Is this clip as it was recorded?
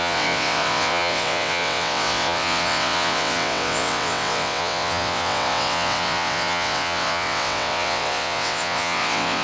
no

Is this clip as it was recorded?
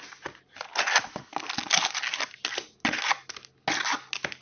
yes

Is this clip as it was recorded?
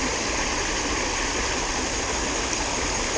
yes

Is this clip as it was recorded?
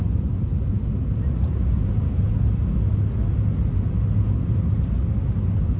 yes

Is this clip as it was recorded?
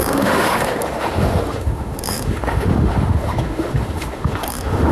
no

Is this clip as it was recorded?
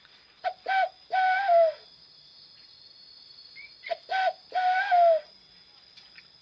yes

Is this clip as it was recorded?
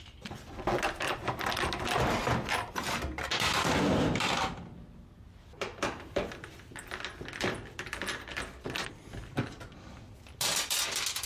yes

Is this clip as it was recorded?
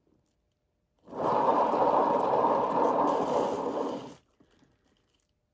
yes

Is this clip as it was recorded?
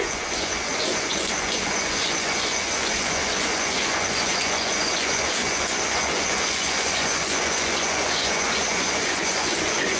no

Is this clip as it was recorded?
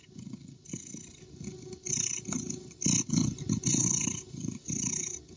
yes